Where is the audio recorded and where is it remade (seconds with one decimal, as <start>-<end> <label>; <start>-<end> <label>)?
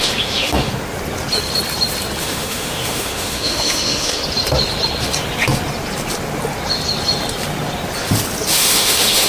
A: 0.0-0.7 remade; 0.7-2.2 recorded; 2.2-4.2 remade; 4.2-8.5 recorded; 8.5-9.3 remade